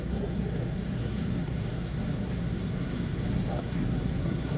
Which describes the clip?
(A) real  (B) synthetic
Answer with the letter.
B